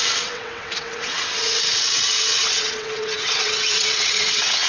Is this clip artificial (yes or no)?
yes